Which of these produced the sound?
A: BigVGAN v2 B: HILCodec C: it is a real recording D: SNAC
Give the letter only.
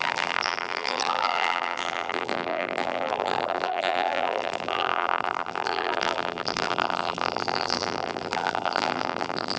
A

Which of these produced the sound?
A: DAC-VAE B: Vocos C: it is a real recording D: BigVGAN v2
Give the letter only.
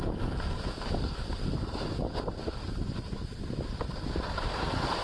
D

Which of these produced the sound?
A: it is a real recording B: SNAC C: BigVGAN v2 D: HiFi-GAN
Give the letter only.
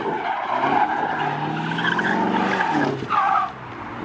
A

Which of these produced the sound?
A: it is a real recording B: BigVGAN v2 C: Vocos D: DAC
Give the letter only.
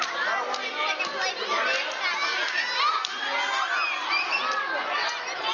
A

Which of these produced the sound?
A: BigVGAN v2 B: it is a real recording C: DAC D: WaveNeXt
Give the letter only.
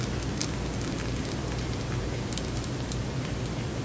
A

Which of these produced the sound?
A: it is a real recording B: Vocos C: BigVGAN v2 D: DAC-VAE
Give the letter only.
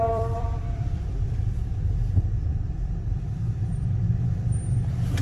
C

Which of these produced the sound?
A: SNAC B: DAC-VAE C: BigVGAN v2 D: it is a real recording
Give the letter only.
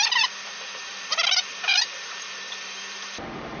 C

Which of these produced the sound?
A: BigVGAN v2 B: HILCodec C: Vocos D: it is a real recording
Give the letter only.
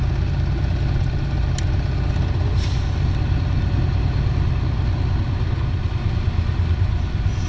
D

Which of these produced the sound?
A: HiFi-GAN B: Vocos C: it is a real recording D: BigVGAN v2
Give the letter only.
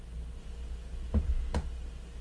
C